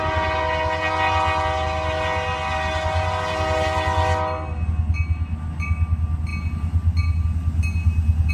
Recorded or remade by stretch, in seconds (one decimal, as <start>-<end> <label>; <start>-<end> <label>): 0.0-8.3 recorded